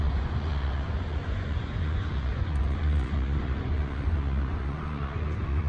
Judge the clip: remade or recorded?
remade